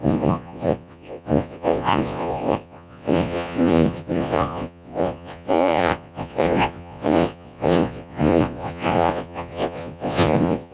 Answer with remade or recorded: remade